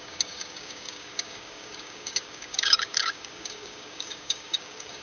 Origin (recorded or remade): remade